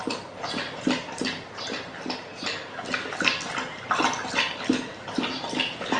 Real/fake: real